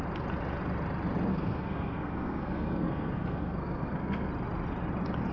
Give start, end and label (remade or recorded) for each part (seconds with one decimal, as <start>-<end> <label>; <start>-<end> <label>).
0.0-1.3 recorded; 1.3-4.3 remade; 4.3-5.3 recorded